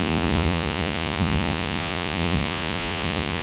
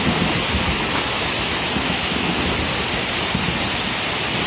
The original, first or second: second